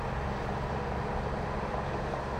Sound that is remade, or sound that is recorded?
recorded